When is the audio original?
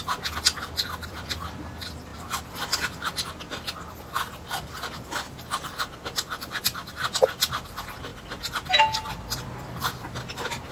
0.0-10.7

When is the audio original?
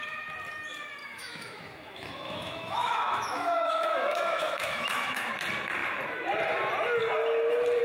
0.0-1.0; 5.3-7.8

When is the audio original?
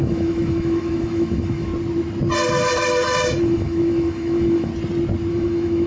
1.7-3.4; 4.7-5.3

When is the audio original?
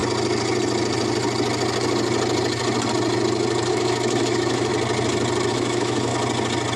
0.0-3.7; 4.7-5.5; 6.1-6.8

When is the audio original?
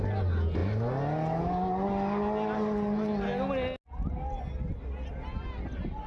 0.0-6.1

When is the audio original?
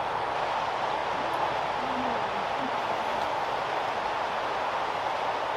0.0-5.6